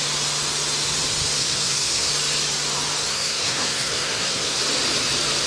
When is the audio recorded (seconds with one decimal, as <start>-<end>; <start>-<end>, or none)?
0.0-1.4; 2.1-3.1; 4.6-5.5